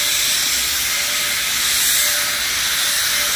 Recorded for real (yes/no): no